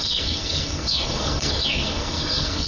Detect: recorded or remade remade